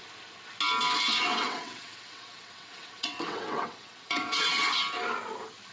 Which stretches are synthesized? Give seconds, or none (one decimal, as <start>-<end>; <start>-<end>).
1.3-4.7